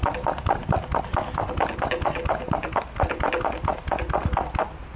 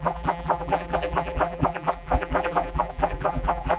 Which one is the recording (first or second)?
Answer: first